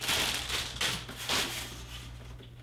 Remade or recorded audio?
recorded